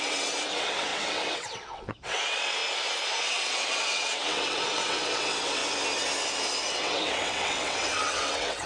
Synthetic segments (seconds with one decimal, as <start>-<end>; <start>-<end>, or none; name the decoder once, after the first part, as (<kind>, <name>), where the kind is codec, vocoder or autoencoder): 0.0-2.6 (vocoder, WaveNeXt); 3.2-5.6; 6.7-8.7